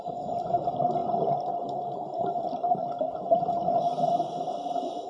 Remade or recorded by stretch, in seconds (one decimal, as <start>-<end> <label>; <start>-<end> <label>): 0.0-5.1 recorded